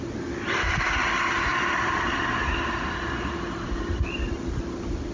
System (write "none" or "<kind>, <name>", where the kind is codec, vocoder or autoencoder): none